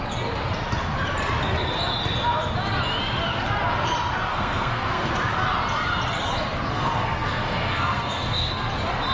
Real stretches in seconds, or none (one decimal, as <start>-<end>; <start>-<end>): 0.0-4.3; 5.1-6.7; 8.5-9.1